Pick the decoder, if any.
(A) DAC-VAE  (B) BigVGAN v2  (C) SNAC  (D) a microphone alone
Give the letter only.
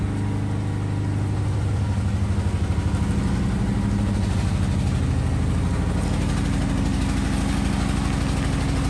D